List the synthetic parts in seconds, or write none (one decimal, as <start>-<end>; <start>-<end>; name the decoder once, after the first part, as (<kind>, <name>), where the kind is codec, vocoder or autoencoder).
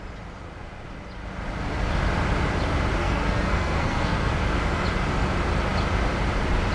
3.0-4.3 (codec, SNAC)